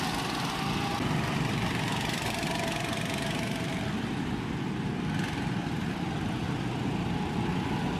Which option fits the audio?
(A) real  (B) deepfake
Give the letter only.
A